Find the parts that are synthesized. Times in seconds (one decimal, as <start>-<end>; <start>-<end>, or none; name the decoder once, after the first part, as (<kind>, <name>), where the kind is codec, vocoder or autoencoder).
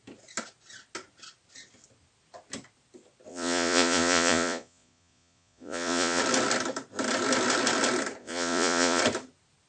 3.3-6.2 (vocoder, Vocos); 8.2-9.0